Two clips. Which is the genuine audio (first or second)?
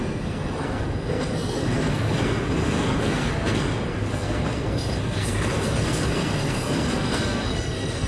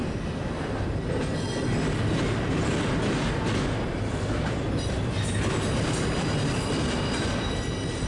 second